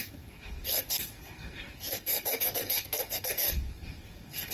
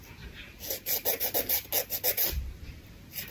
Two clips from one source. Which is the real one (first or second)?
second